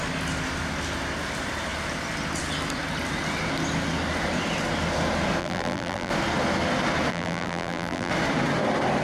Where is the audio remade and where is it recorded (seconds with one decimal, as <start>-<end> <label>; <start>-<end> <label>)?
0.0-5.4 recorded; 5.4-6.1 remade; 6.1-7.1 recorded; 7.1-8.1 remade; 8.1-9.0 recorded